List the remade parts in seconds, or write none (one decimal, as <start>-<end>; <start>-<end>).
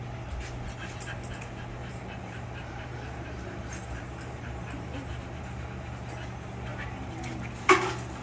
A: 1.8-5.9; 6.7-7.3